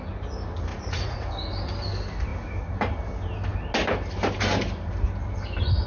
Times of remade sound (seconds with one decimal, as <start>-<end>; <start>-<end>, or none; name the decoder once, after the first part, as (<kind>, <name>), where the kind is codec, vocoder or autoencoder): 0.7-1.3 (vocoder, Vocos)